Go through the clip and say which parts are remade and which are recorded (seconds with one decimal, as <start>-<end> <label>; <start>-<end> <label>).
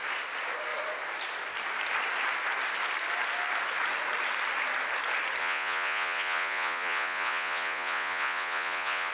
0.0-5.4 recorded; 5.4-9.1 remade